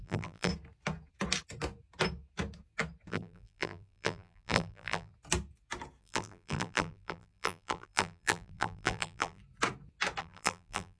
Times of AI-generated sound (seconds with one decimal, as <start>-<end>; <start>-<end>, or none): 0.0-0.5; 3.1-5.1; 6.0-9.4; 10.2-11.0